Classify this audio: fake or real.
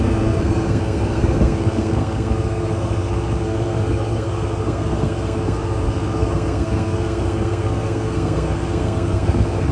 fake